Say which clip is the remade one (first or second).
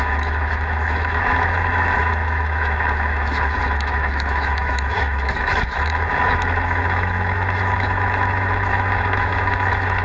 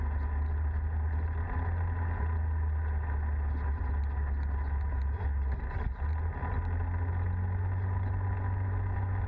first